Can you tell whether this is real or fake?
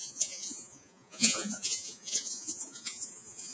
fake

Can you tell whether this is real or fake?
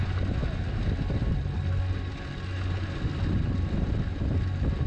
real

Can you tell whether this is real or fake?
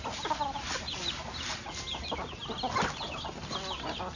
real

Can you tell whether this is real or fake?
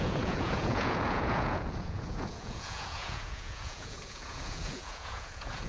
fake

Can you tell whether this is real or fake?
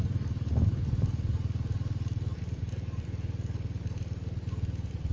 real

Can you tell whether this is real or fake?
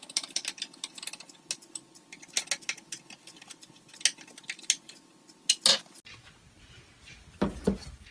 real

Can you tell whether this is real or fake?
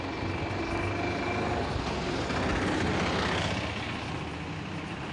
real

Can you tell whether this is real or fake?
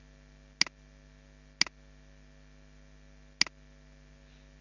real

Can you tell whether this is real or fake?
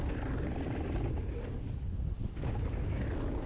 real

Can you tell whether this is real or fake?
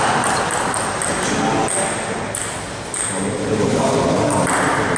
real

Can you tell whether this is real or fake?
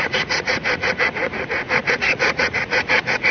fake